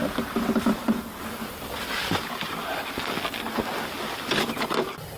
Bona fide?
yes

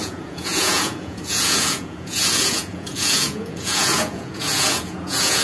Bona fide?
no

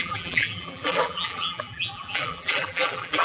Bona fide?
no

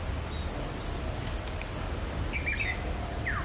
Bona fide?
yes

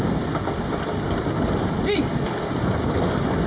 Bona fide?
yes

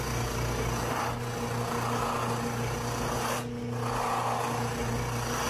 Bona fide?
yes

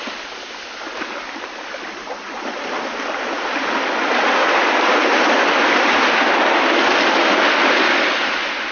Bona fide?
yes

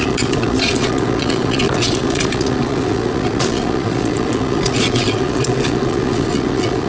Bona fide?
no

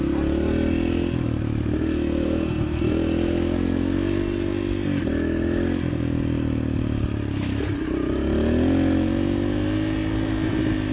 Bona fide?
yes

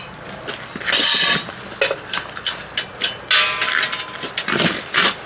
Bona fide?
yes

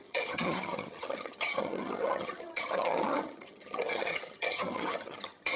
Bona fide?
no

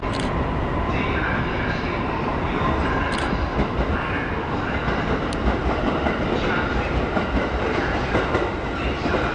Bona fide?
yes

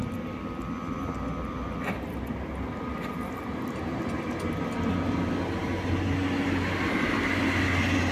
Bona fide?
yes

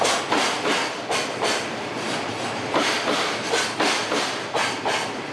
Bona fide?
yes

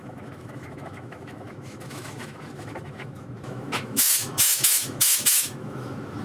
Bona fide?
no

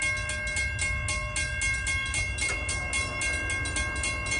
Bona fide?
yes